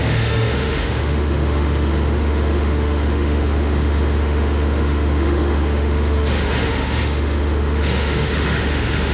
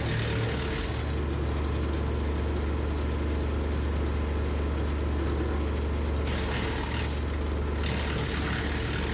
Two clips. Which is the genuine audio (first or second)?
second